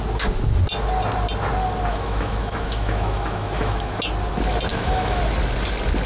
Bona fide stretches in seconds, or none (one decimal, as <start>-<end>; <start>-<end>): 0.0-1.9; 4.0-4.7; 5.2-6.1